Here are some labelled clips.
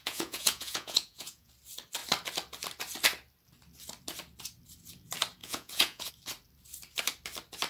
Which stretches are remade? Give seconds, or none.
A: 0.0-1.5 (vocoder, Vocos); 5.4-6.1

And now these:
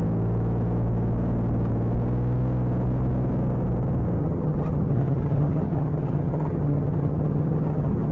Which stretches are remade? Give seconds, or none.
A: 4.2-8.1 (vocoder, HiFi-GAN)

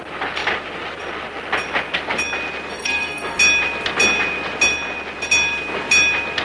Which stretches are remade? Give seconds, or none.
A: 2.7-3.4 (codec, SNAC)

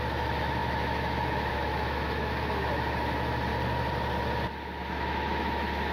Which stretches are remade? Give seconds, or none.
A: 0.0-3.5 (autoencoder, DAC-VAE); 4.8-5.9